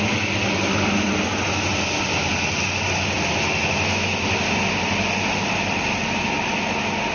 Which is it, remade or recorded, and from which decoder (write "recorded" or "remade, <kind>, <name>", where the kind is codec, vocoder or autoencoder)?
recorded